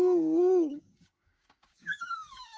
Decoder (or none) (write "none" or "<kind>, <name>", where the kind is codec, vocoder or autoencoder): codec, DAC